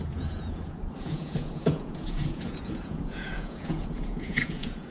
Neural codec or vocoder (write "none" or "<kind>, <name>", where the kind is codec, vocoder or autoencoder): vocoder, Vocos